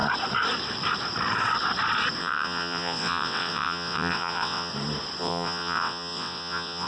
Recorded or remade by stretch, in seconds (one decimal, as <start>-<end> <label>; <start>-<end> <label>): 0.0-2.2 recorded; 2.2-4.7 remade; 4.7-5.2 recorded; 5.2-6.9 remade